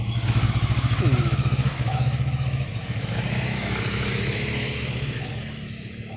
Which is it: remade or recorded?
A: remade